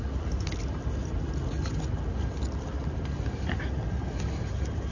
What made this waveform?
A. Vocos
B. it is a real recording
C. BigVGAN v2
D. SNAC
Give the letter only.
B